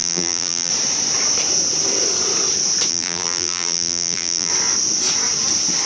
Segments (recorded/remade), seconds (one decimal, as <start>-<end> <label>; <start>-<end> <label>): 0.0-0.7 remade; 0.7-2.9 recorded; 2.9-4.5 remade; 4.5-5.9 recorded